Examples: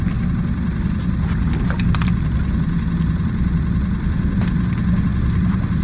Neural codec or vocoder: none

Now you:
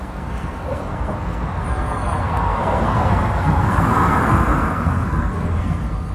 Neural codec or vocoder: codec, SNAC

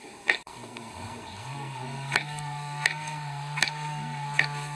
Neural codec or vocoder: codec, SNAC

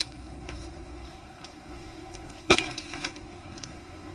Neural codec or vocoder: codec, SNAC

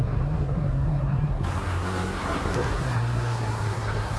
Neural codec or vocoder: codec, SNAC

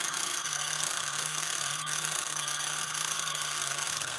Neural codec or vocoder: codec, SNAC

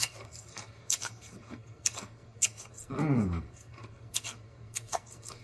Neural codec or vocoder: codec, SNAC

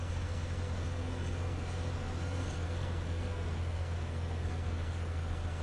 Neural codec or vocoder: codec, SNAC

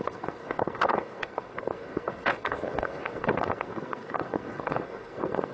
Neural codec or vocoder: codec, SNAC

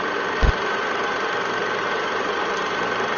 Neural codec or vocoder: none